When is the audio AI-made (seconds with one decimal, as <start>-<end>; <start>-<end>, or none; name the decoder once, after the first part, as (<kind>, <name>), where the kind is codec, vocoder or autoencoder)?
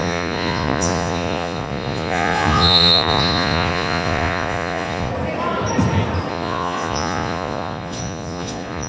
0.0-5.1 (vocoder, Vocos); 6.3-8.9